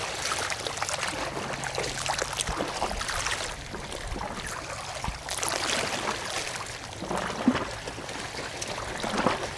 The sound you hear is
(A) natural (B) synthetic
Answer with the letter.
A